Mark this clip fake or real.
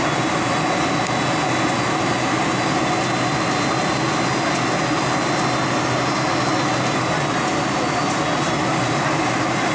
real